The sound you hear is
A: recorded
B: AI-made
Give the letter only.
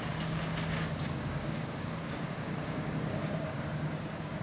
B